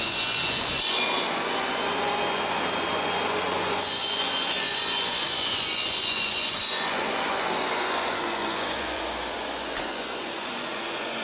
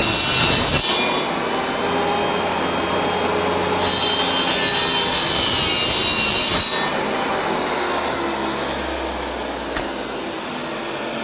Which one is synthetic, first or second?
first